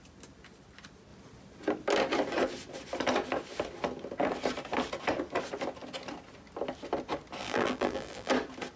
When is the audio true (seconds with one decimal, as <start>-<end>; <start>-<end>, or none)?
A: 0.0-7.4; 8.3-8.8